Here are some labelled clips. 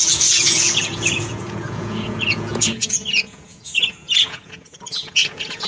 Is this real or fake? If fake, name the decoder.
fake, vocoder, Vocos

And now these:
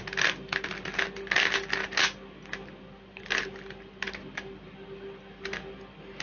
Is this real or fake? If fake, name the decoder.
real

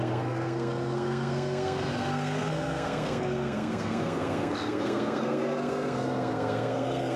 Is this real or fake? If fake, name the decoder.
fake, codec, SNAC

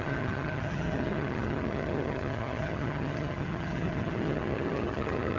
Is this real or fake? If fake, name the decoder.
fake, vocoder, HiFi-GAN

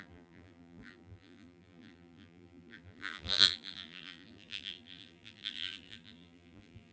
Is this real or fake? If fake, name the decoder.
fake, vocoder, BigVGAN v2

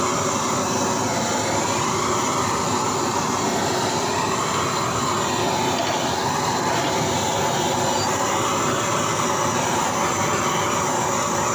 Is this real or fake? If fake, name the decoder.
real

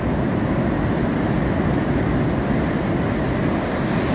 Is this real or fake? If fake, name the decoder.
real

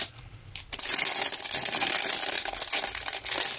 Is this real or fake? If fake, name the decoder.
real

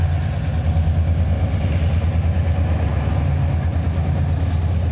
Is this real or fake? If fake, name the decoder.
real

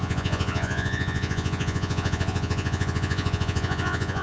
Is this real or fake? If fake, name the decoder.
fake, vocoder, Vocos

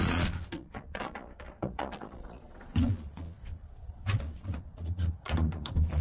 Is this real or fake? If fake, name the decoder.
fake, vocoder, Vocos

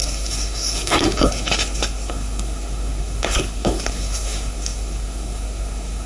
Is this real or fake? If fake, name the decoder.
fake, codec, SNAC